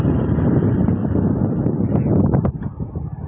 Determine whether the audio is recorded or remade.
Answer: recorded